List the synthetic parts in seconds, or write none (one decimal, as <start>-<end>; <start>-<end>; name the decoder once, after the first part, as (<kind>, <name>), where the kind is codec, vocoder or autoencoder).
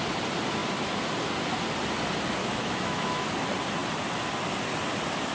2.4-3.3 (autoencoder, DAC-VAE)